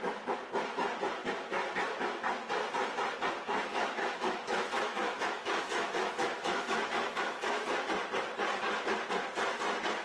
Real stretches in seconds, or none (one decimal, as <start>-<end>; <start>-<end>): 0.0-3.7; 7.7-10.0